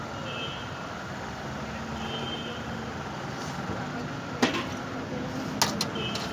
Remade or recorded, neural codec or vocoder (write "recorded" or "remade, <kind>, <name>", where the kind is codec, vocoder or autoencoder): recorded